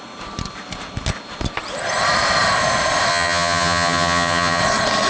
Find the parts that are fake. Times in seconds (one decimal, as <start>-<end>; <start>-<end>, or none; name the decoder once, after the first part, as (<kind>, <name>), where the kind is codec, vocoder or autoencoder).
3.1-4.6 (vocoder, HiFi-GAN)